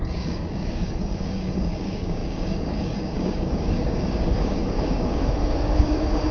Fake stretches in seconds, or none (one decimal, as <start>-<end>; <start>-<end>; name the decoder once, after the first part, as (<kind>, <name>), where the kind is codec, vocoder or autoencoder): 0.0-6.3 (codec, DAC)